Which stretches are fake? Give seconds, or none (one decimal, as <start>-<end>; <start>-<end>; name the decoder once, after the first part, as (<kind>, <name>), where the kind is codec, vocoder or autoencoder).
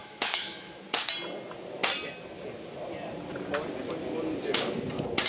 0.0-0.8 (autoencoder, DAC-VAE)